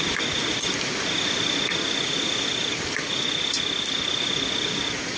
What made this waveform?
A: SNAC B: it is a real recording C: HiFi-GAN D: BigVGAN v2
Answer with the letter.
B